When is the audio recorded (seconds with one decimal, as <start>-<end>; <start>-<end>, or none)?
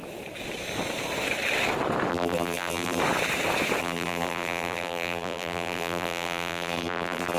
0.0-2.1; 3.0-3.8